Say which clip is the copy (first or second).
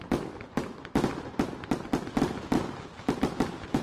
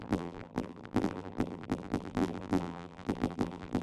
second